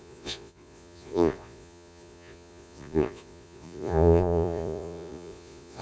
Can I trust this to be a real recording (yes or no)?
no